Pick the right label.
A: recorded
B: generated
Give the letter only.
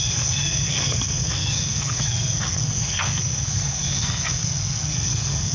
B